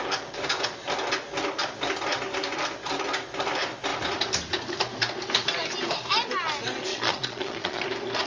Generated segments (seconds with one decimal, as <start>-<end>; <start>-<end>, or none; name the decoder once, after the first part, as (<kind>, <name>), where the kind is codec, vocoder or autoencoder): 6.9-7.8 (vocoder, Vocos)